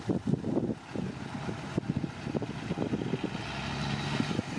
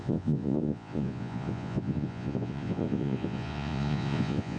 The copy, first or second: second